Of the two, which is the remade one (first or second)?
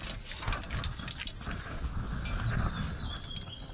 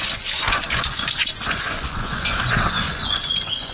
second